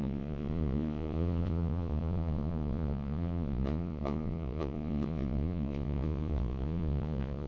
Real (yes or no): no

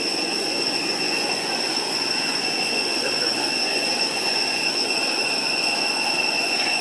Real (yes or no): no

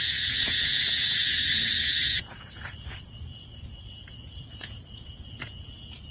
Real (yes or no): no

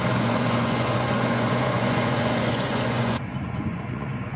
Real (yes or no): no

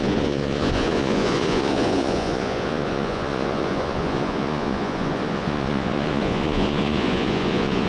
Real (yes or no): no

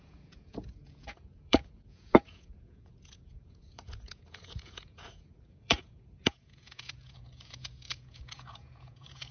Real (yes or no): no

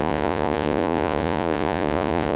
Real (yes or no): no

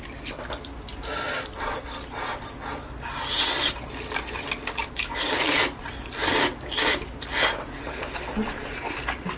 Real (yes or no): yes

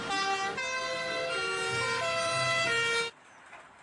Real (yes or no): yes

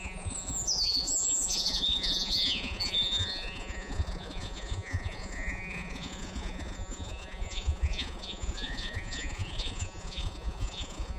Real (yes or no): no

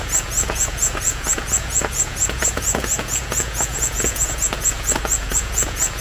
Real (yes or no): no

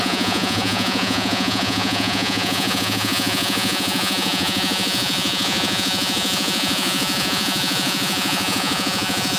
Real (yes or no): no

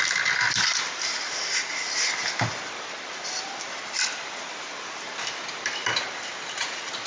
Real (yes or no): yes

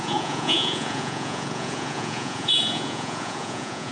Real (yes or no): no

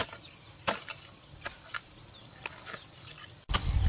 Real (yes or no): yes